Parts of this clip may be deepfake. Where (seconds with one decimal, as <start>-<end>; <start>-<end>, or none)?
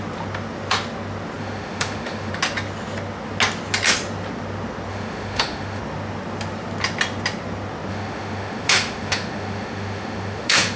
1.4-2.3; 4.9-5.8; 7.9-10.8